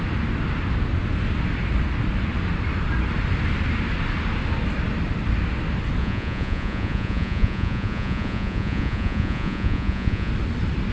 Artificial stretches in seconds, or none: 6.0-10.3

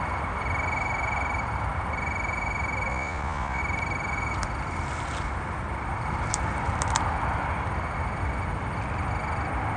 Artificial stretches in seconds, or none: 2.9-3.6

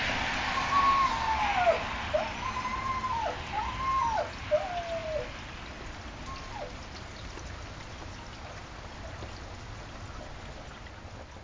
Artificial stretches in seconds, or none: none

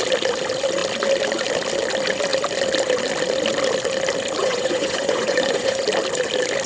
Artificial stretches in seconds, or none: 4.4-5.8

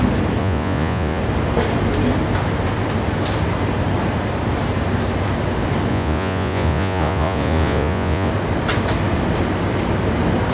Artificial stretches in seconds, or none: 0.4-1.2; 5.9-8.3

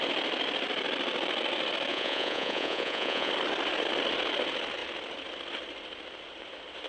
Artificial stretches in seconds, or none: 1.9-3.3

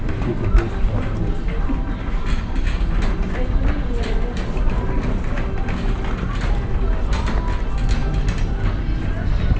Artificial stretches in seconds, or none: none